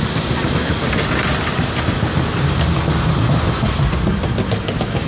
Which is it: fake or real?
real